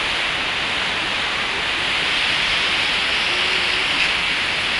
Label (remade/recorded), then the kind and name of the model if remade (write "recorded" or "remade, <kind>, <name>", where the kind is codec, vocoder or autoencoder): recorded